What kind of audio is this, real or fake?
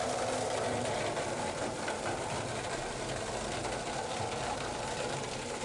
real